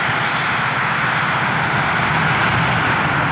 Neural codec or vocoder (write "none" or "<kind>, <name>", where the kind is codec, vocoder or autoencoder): none